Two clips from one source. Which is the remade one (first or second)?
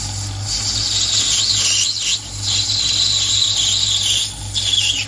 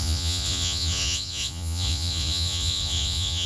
second